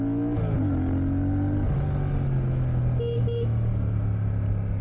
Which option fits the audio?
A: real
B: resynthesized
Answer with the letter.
A